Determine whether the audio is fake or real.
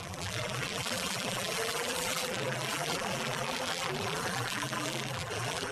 fake